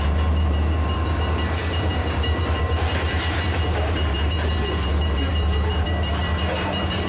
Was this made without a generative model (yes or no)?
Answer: no